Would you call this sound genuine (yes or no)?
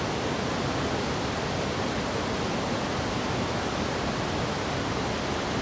yes